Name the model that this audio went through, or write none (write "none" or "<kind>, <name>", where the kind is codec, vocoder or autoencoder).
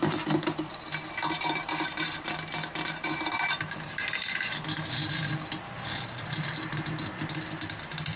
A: none